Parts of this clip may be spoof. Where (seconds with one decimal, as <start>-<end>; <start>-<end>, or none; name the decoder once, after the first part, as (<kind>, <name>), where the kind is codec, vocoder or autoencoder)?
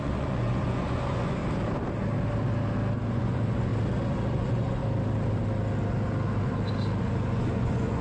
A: 0.0-1.4 (vocoder, Vocos); 3.1-3.7; 4.3-4.8; 7.0-8.0